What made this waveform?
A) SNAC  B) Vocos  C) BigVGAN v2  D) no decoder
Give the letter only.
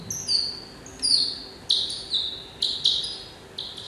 D